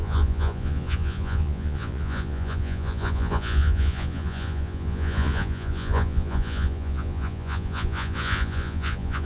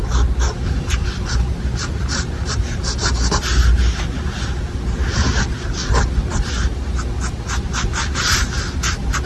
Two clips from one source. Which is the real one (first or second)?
second